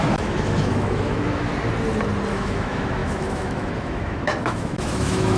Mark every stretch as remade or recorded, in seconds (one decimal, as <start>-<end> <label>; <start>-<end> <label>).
0.0-1.5 remade; 1.5-2.3 recorded; 2.3-5.4 remade